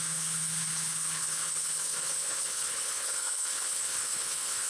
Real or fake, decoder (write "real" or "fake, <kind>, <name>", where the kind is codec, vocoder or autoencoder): fake, codec, HILCodec